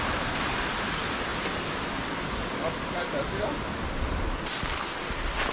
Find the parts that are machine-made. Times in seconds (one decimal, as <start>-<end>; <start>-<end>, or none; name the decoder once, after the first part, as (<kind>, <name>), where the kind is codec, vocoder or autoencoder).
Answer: none